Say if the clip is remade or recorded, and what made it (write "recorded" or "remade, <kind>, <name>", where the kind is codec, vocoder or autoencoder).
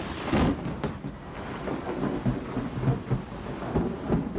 recorded